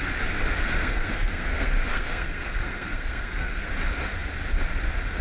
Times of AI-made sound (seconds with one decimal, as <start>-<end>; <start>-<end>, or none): 0.8-3.7